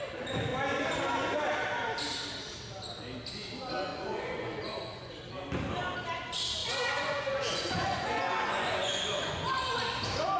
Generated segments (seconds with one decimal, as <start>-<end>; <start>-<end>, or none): 3.9-5.1; 6.6-9.5

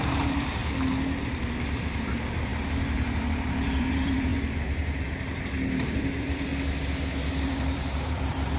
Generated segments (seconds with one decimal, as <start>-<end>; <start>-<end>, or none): 0.0-0.6; 1.2-6.5; 7.3-8.6

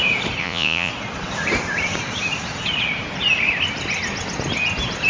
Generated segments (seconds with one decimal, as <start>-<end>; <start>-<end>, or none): 0.4-0.9

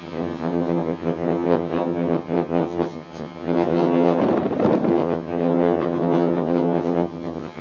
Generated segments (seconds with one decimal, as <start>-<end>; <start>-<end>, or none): 0.0-4.2; 4.9-7.6

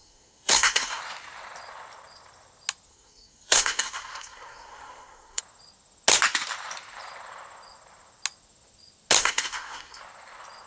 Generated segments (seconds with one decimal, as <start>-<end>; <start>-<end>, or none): 0.0-1.0; 2.9-5.4; 9.2-10.0

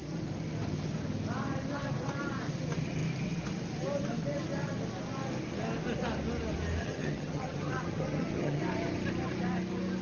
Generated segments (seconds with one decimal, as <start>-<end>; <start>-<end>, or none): 6.8-8.6